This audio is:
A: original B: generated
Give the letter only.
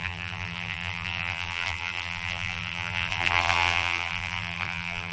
B